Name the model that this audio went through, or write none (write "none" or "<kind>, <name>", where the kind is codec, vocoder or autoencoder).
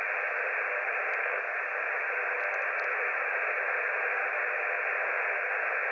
none